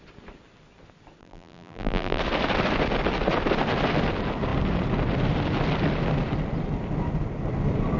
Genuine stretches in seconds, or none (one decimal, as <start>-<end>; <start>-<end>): 0.0-1.2; 2.2-8.0